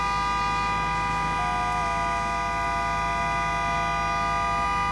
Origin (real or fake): real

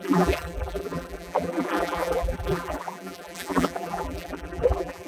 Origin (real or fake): fake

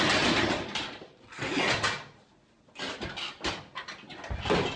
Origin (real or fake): real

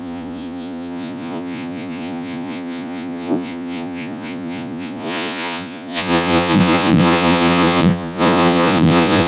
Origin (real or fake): fake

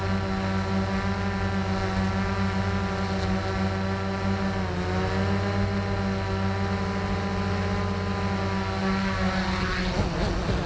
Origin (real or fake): real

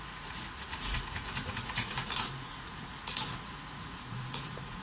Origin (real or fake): fake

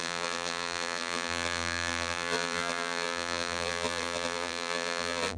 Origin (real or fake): fake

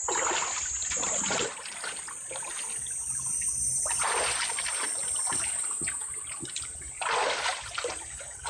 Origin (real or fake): real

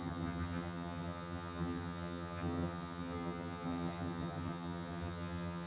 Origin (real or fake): fake